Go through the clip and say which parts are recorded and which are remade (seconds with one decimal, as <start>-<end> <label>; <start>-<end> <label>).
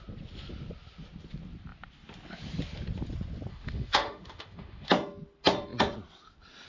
0.0-3.5 recorded; 3.5-4.9 remade; 4.9-6.7 recorded